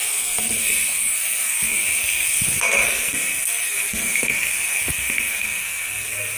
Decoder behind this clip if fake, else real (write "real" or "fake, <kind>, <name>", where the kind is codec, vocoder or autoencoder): fake, codec, SNAC